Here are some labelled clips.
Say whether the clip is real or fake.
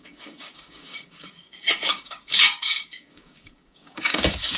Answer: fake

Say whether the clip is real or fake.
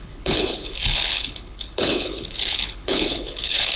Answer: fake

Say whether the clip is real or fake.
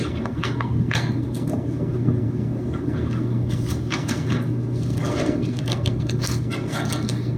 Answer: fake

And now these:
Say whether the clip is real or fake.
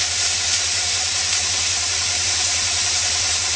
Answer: real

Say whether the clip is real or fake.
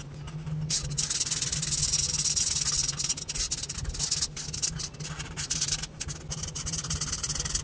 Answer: real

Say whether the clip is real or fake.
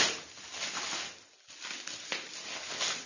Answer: real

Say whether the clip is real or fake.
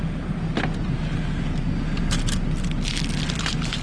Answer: real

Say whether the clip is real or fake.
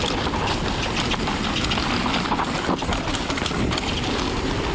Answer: real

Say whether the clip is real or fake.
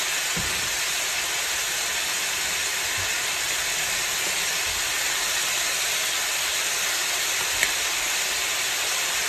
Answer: real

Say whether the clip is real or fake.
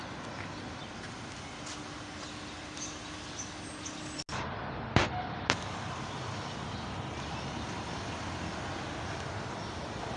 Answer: real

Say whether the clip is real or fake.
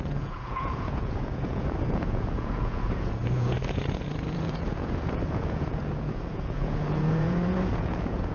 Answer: fake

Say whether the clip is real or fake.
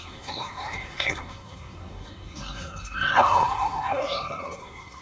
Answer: fake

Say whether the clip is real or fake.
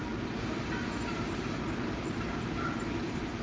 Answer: fake